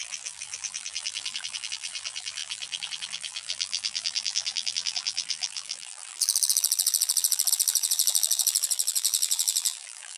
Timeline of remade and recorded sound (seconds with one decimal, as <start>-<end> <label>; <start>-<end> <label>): 0.0-10.2 remade